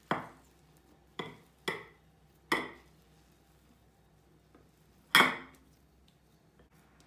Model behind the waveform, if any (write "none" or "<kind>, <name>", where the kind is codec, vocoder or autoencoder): none